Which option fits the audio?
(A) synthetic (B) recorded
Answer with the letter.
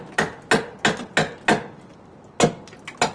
B